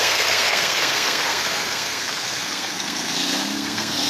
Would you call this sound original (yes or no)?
no